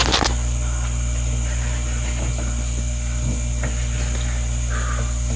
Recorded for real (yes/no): yes